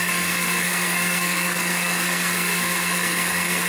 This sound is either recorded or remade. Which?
remade